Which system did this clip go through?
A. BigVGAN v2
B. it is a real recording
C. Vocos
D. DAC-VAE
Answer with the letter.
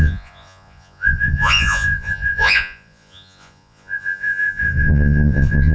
C